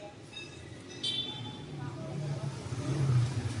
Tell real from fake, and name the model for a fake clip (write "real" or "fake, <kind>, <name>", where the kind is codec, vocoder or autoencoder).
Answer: real